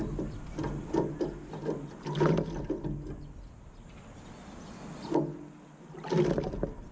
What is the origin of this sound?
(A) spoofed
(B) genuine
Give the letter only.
B